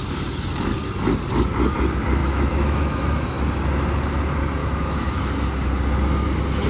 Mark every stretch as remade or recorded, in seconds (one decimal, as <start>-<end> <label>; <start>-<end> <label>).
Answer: 0.0-2.2 recorded; 2.2-3.4 remade; 3.4-4.6 recorded; 4.6-5.3 remade; 5.3-6.7 recorded